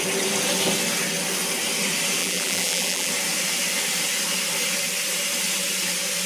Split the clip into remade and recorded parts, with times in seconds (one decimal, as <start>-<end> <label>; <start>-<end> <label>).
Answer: 0.0-2.2 recorded; 2.2-3.1 remade; 3.1-6.3 recorded